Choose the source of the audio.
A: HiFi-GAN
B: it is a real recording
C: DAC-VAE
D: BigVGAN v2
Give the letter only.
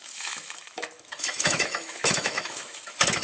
C